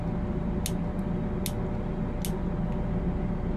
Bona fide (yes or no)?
yes